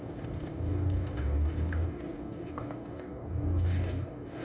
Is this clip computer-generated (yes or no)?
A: yes